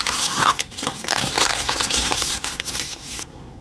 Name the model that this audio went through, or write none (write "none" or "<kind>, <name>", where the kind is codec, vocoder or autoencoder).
codec, SNAC